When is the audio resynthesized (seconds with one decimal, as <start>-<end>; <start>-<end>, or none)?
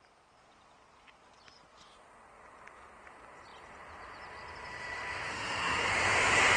5.3-5.9